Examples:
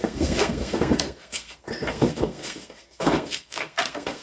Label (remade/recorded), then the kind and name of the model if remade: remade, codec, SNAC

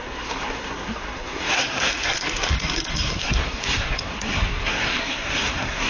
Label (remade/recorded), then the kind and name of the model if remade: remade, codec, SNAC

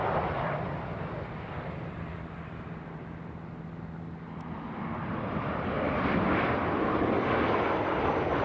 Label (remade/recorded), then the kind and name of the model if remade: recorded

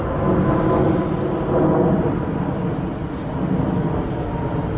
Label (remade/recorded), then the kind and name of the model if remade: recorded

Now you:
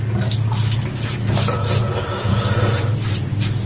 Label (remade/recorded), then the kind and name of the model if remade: recorded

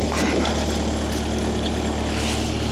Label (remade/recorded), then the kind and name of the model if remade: recorded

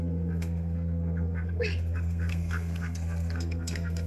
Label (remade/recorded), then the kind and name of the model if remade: remade, codec, SNAC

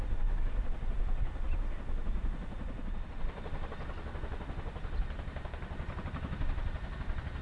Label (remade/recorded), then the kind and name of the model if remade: recorded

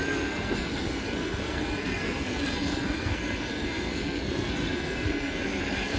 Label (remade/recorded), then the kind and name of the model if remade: remade, codec, SNAC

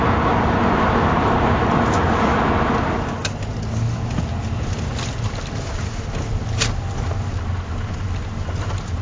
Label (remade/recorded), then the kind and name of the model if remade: recorded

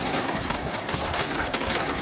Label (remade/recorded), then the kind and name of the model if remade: remade, codec, SNAC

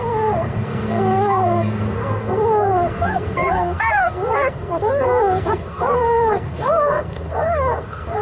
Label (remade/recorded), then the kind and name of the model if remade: remade, codec, SNAC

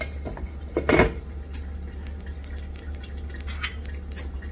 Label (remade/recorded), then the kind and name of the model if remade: recorded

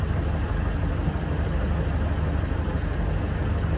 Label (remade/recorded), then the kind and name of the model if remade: recorded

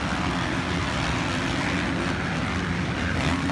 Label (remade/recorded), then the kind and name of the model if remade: recorded